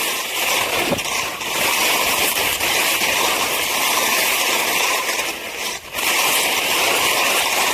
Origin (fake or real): real